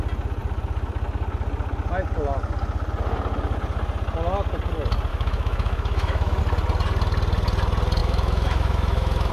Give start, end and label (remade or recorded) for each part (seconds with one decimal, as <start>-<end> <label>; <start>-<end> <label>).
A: 0.0-5.1 recorded; 5.1-6.4 remade; 6.4-8.0 recorded; 8.0-9.3 remade